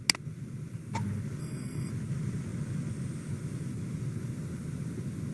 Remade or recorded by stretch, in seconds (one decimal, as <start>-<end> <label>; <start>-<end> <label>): 0.0-1.4 recorded; 1.4-1.9 remade; 1.9-5.3 recorded